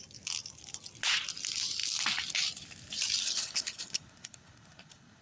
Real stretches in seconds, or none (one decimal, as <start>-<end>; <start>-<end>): 0.0-3.2